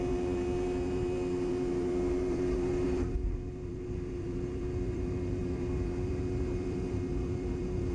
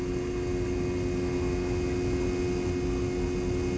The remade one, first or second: first